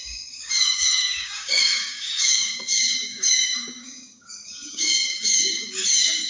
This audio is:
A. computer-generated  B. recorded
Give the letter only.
A